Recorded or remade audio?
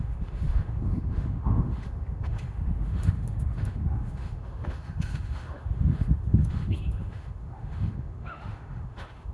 remade